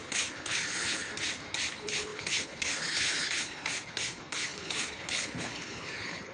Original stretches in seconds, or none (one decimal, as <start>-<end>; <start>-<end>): 1.1-1.7